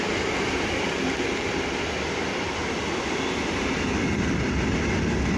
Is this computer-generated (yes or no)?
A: no